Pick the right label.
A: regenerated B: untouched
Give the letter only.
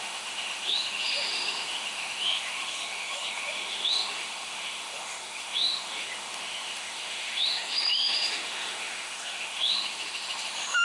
A